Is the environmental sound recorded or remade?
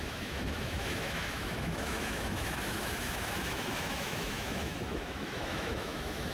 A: remade